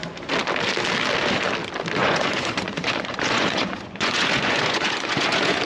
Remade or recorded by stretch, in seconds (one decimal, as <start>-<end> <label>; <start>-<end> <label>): 0.0-2.0 recorded; 2.0-5.6 remade